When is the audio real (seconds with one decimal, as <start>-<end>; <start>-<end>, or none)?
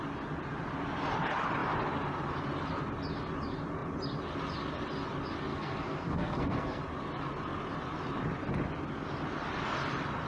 0.0-5.5; 6.8-10.3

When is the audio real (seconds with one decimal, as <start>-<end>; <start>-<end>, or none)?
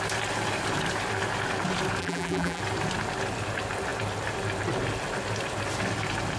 0.0-2.0; 2.6-6.4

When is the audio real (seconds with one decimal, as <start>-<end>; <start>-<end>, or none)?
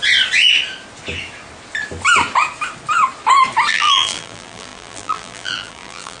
0.0-3.7